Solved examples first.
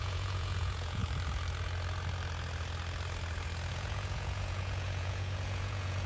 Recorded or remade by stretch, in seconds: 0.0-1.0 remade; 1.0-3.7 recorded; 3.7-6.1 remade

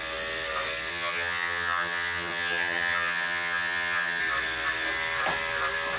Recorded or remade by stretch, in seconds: 0.0-0.9 recorded; 0.9-4.2 remade; 4.2-6.0 recorded

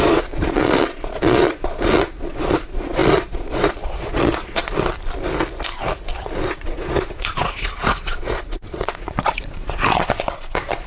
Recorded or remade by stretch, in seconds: 0.0-4.6 remade; 4.6-6.5 recorded; 6.5-10.9 remade

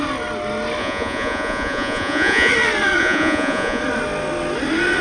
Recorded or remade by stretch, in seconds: 0.0-0.8 recorded; 0.8-2.5 remade; 2.5-3.0 recorded; 3.0-3.8 remade; 3.8-5.0 recorded

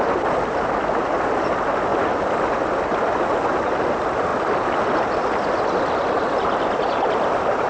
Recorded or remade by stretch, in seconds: 0.0-7.7 recorded

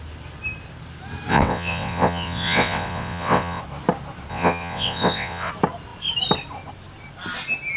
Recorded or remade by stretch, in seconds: 0.0-1.3 recorded; 1.3-3.6 remade; 3.6-4.3 recorded; 4.3-5.5 remade; 5.5-7.8 recorded